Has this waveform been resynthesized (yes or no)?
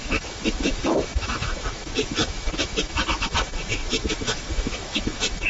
yes